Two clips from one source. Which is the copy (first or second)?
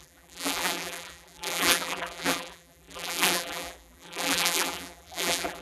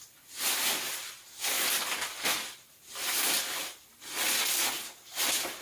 first